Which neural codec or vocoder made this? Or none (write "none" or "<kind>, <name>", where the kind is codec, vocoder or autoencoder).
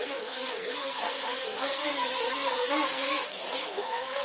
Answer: codec, SNAC